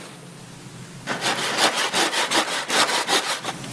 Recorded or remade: recorded